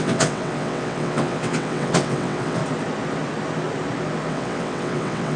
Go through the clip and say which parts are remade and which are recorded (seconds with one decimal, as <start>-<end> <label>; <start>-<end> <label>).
0.0-2.6 remade; 2.6-4.3 recorded; 4.3-5.4 remade